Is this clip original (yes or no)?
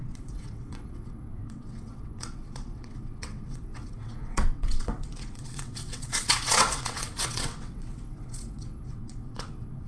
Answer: no